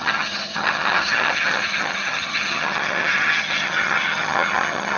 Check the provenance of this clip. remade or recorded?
remade